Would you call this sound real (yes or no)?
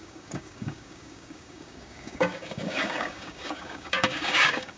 no